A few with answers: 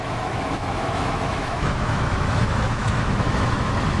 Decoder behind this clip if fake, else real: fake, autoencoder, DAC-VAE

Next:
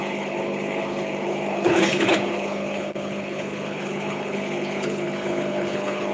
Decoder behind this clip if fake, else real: fake, codec, HILCodec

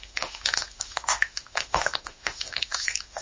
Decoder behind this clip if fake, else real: fake, autoencoder, DAC-VAE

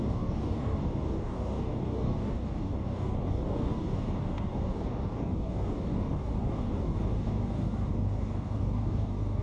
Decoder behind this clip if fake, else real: fake, codec, DAC